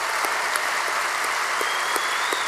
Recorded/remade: recorded